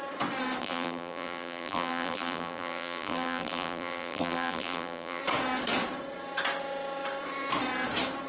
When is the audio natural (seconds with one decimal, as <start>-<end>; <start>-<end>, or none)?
0.0-0.6; 5.2-8.3